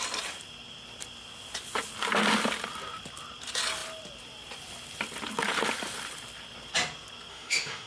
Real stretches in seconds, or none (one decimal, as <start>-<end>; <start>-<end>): 0.0-7.3